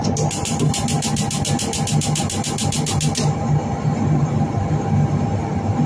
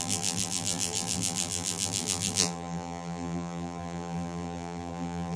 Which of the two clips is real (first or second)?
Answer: first